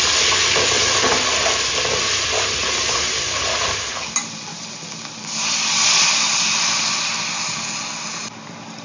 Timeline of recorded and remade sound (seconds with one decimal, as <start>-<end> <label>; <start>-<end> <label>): 0.0-2.6 recorded; 2.6-5.2 remade; 5.2-8.8 recorded